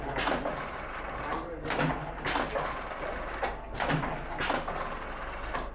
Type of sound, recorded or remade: recorded